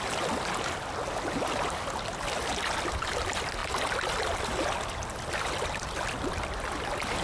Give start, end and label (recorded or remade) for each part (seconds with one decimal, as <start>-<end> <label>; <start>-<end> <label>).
0.0-7.2 recorded